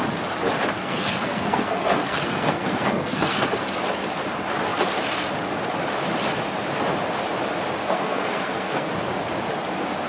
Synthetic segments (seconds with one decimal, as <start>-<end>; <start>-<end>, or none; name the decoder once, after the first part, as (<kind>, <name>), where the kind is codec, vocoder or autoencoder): 0.8-3.5 (codec, SNAC); 7.8-8.9